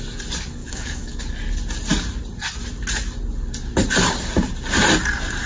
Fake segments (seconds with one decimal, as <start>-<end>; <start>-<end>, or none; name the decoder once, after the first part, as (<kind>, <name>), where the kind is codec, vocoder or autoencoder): 0.6-1.2 (autoencoder, DAC-VAE)